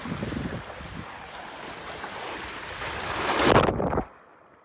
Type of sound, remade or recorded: recorded